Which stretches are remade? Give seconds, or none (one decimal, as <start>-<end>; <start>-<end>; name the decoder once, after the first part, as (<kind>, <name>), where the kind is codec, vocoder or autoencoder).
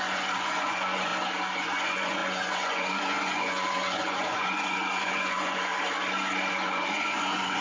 0.0-1.1 (vocoder, Vocos); 1.6-5.7; 6.5-7.6